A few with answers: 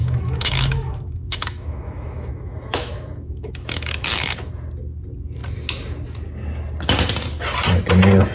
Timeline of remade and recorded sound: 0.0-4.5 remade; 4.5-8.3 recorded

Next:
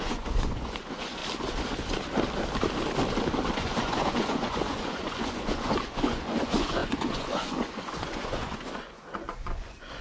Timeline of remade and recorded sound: 0.0-1.2 remade; 1.2-3.5 recorded; 3.5-10.0 remade